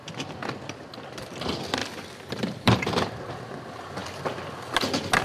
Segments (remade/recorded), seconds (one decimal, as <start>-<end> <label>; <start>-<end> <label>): 0.0-1.8 recorded; 1.8-3.3 remade; 3.3-5.2 recorded